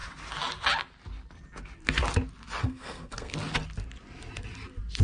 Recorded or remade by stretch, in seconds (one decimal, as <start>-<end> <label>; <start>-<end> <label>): 0.0-2.6 recorded; 2.6-3.3 remade; 3.3-5.0 recorded